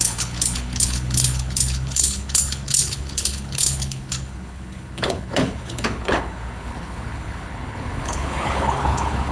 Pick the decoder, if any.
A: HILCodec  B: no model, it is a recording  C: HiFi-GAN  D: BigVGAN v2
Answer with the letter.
A